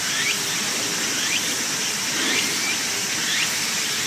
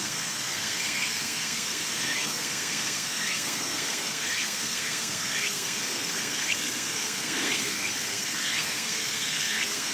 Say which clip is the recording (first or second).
first